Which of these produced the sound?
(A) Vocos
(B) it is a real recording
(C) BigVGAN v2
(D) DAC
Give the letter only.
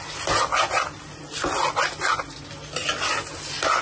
B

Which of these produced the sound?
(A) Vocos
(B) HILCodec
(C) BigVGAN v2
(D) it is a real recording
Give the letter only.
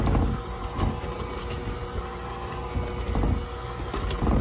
D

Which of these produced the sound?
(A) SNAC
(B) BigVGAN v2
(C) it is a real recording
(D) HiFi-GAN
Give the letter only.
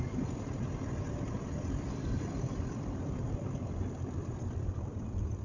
B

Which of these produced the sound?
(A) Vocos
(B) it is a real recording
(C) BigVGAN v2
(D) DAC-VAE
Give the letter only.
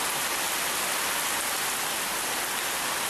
B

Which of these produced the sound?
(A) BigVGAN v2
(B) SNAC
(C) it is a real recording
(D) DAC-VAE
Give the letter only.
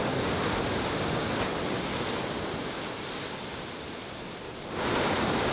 C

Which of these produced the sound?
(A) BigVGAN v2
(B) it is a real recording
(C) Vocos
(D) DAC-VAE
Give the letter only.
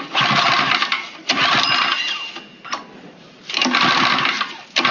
B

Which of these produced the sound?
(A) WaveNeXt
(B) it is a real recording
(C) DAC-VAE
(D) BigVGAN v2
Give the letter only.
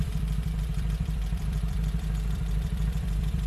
D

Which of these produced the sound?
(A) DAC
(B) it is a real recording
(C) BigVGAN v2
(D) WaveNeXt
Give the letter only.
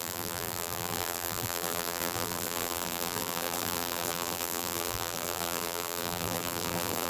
C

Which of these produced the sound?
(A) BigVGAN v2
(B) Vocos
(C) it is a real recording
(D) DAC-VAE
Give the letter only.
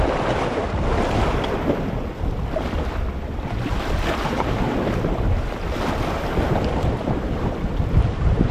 A